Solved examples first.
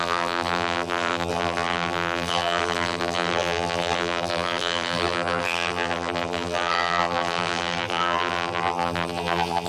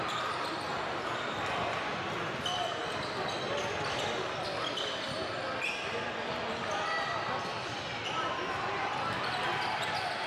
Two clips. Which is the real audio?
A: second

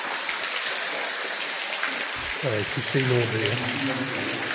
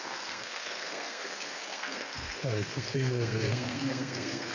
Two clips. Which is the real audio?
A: first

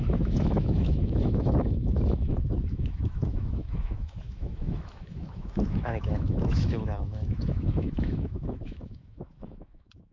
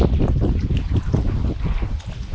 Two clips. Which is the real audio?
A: second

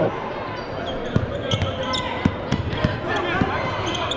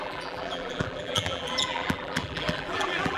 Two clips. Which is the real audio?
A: first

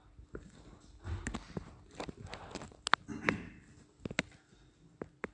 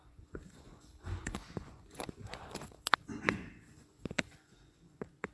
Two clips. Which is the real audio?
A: first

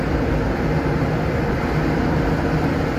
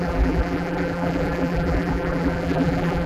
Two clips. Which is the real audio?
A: first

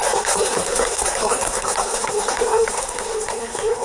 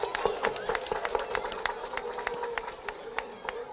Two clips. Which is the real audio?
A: second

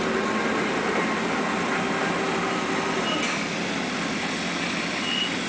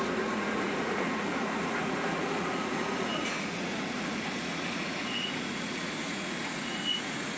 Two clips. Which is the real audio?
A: first